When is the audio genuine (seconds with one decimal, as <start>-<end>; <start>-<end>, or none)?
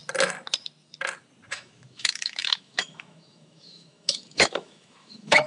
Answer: 0.0-1.5